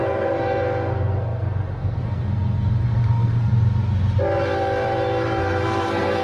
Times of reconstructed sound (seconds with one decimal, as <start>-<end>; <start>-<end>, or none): 0.0-3.5; 5.4-6.2